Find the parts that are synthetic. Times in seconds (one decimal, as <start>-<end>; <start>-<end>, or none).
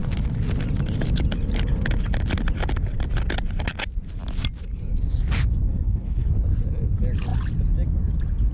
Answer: 5.7-6.3